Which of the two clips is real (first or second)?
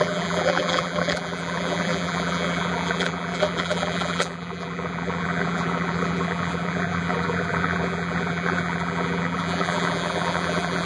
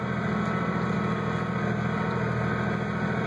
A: second